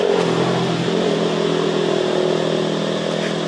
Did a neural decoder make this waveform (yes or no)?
no